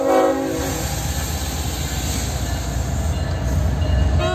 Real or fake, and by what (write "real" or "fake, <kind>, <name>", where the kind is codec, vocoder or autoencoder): real